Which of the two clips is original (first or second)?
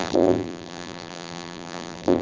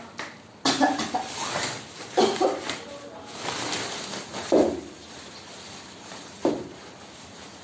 second